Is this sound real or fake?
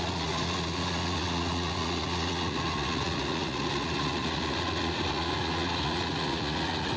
fake